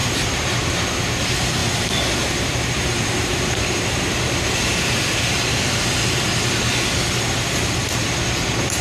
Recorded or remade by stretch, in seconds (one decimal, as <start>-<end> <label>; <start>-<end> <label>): 0.0-0.7 remade; 0.7-1.6 recorded; 1.6-4.9 remade; 4.9-8.8 recorded